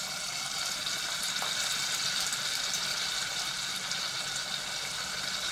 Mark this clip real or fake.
real